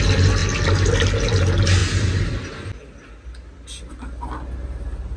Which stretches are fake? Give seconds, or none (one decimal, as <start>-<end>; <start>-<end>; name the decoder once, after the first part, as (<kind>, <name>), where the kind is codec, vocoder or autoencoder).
none